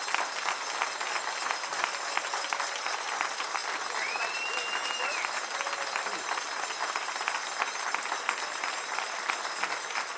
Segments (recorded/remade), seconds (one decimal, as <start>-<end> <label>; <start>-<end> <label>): 0.0-10.2 recorded

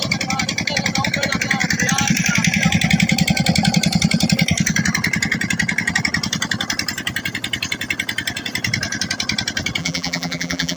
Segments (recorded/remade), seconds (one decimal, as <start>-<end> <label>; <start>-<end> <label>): 0.0-9.8 recorded; 9.8-10.8 remade

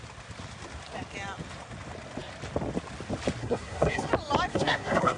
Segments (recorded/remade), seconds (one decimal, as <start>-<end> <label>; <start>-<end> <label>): 0.0-3.4 recorded; 3.4-4.1 remade; 4.1-4.5 recorded; 4.5-5.2 remade

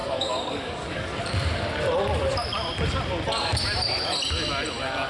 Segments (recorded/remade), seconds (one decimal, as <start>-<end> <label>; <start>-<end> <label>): 0.0-1.2 remade; 1.2-5.1 recorded

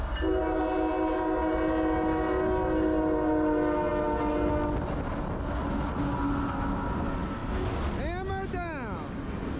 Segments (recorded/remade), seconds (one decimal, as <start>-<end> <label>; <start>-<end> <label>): 0.0-9.6 recorded

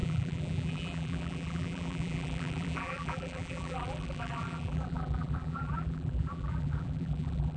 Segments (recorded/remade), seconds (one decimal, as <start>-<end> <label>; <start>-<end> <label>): 0.0-7.6 remade

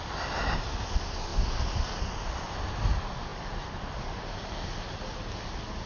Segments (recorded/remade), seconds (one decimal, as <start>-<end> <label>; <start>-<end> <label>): 0.0-5.9 recorded

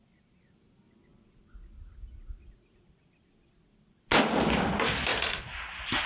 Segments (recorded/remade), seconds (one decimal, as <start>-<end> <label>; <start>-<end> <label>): 0.0-6.1 recorded